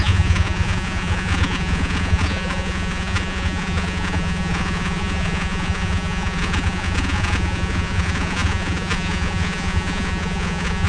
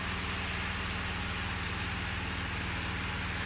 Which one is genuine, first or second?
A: second